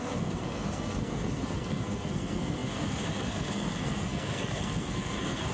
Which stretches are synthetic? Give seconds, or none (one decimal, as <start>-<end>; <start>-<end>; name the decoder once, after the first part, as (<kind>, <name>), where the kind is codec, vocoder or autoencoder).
0.0-5.5 (codec, SNAC)